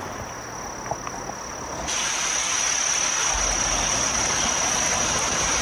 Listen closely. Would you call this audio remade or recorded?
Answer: recorded